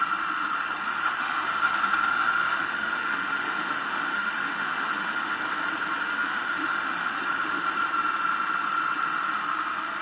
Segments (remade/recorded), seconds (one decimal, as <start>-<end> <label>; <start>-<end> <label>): 0.0-0.8 recorded; 0.8-1.7 remade; 1.7-2.1 recorded; 2.1-5.4 remade; 5.4-6.1 recorded; 6.1-7.7 remade; 7.7-10.0 recorded